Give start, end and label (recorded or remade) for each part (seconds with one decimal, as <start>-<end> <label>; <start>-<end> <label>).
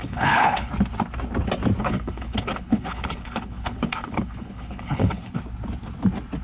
0.0-0.7 remade; 0.7-1.8 recorded; 1.8-5.4 remade; 5.4-6.4 recorded